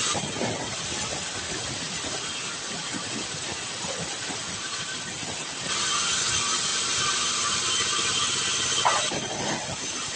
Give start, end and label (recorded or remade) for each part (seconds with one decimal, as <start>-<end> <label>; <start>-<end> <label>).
0.0-10.2 recorded